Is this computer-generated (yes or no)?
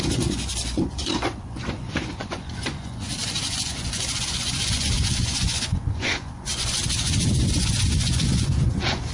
yes